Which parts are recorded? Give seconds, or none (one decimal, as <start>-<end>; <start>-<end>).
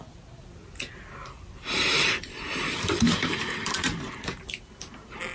0.0-1.2; 4.4-5.3